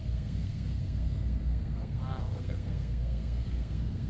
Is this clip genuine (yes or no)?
no